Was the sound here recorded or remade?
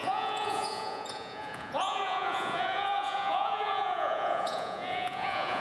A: remade